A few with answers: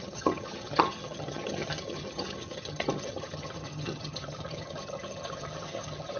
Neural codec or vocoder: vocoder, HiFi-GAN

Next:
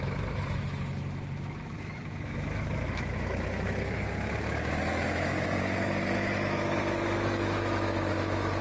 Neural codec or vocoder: autoencoder, DAC-VAE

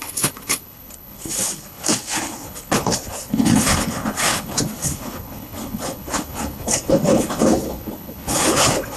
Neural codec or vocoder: codec, HILCodec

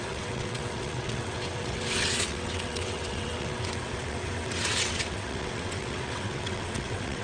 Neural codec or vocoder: vocoder, WaveNeXt